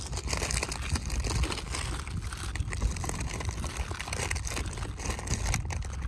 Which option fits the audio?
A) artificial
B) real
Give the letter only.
B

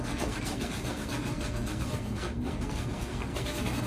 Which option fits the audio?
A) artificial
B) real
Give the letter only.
A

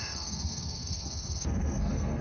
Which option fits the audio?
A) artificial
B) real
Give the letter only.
A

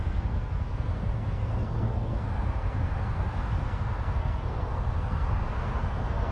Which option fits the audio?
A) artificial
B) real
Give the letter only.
A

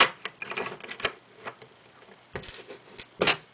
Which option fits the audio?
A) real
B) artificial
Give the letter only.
A